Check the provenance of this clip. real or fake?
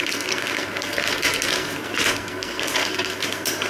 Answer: fake